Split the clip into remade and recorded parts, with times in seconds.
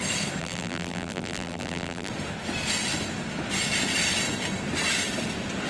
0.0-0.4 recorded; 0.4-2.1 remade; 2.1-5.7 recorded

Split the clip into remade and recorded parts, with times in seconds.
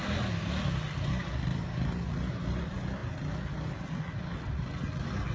0.0-5.3 recorded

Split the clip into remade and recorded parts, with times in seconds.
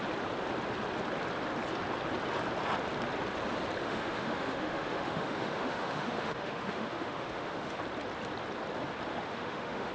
0.0-3.8 recorded; 3.8-7.8 remade; 7.8-9.1 recorded; 9.1-9.9 remade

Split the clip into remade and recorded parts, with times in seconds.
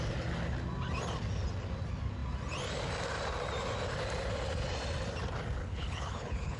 0.0-5.6 recorded; 5.6-6.6 remade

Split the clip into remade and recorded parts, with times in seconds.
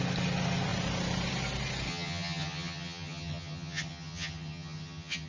0.0-1.9 recorded; 1.9-5.3 remade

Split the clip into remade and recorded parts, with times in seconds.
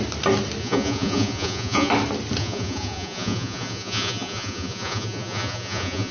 0.0-0.6 recorded; 0.6-1.9 remade; 1.9-2.4 recorded; 2.4-6.1 remade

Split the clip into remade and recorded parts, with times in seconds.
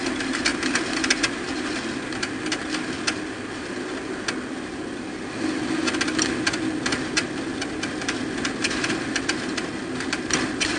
0.0-10.8 recorded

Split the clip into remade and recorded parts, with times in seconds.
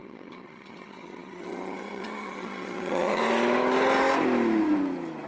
0.0-3.2 remade; 3.2-5.3 recorded